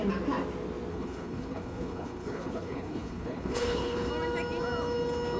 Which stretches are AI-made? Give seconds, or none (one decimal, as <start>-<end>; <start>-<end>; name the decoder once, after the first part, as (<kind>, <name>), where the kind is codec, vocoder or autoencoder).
0.9-4.1 (codec, HILCodec)